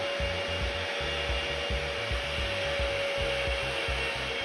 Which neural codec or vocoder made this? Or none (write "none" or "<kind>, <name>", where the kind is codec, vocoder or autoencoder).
none